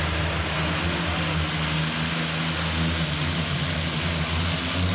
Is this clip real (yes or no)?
yes